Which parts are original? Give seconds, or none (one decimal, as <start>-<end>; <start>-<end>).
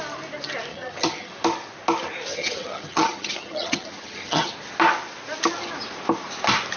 0.0-0.7; 1.3-2.3; 4.5-6.8